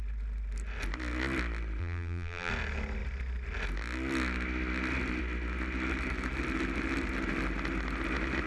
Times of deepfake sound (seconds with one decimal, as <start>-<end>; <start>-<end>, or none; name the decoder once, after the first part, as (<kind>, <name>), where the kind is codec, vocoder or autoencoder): 1.8-2.5 (vocoder, BigVGAN v2)